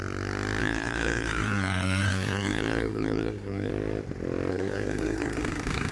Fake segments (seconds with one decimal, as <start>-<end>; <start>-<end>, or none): 0.6-3.7; 4.5-5.9